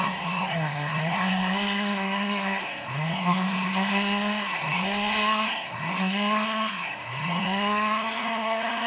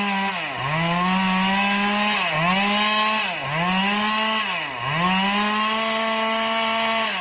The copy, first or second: first